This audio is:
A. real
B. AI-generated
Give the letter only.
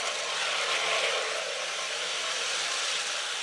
A